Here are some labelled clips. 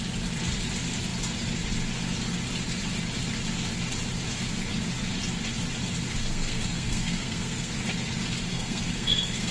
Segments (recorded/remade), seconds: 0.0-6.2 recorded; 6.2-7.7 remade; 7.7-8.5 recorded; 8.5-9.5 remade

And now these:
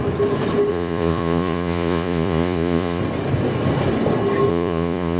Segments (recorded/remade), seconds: 0.0-0.7 recorded; 0.7-3.0 remade; 3.0-4.5 recorded; 4.5-5.2 remade

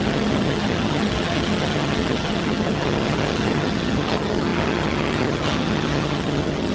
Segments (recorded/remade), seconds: 0.0-6.7 remade